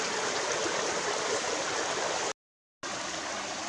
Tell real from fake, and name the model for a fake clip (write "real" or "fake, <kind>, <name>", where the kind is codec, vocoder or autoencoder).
real